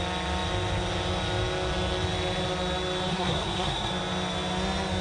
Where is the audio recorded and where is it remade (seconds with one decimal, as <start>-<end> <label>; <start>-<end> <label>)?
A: 0.0-3.1 recorded; 3.1-3.9 remade; 3.9-5.0 recorded